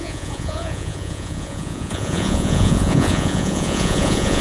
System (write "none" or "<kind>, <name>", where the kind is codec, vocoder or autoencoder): vocoder, Vocos